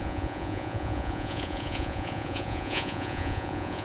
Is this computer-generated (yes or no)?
yes